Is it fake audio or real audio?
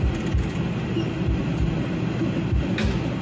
real